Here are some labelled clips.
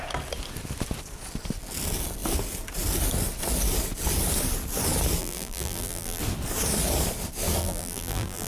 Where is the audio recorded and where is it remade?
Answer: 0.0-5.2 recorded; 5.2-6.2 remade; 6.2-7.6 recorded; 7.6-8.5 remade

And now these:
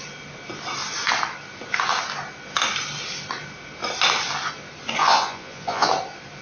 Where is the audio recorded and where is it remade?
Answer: 0.0-5.0 recorded; 5.0-5.9 remade; 5.9-6.4 recorded

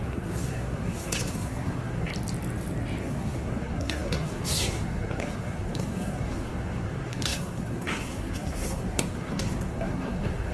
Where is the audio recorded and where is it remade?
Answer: 0.0-2.1 remade; 2.1-3.0 recorded; 3.0-10.5 remade

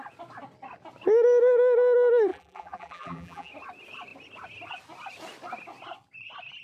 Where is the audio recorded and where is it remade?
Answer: 0.0-2.3 recorded; 2.3-3.5 remade; 3.5-6.6 recorded

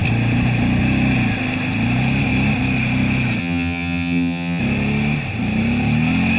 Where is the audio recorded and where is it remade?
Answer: 0.0-3.4 recorded; 3.4-4.6 remade; 4.6-6.4 recorded